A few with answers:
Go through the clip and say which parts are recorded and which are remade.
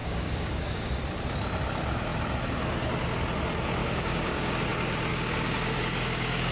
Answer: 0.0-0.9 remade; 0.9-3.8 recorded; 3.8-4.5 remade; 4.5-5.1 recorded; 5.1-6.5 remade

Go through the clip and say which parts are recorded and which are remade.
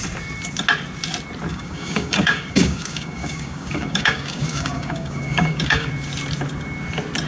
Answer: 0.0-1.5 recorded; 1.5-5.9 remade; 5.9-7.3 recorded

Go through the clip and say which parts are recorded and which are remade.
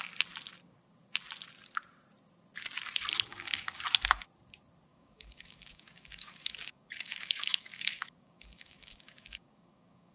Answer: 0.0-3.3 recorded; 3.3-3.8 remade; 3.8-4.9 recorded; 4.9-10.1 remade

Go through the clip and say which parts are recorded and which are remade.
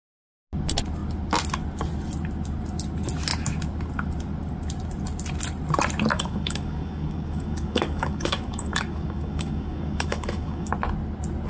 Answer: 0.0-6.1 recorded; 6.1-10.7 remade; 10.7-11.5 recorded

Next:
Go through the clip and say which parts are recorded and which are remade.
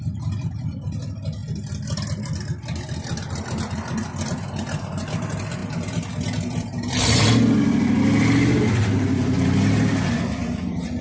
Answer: 0.0-11.0 recorded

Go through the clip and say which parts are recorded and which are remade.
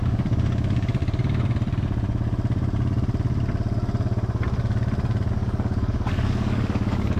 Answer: 0.0-1.0 remade; 1.0-5.3 recorded; 5.3-7.2 remade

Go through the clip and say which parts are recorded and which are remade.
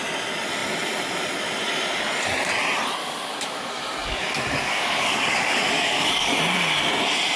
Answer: 0.0-3.0 recorded; 3.0-6.4 remade; 6.4-7.4 recorded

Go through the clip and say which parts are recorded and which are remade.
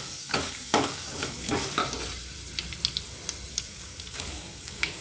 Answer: 0.0-1.8 remade; 1.8-3.5 recorded; 3.5-5.0 remade